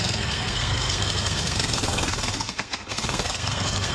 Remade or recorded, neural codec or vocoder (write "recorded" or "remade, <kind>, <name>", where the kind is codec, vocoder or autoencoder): remade, codec, SNAC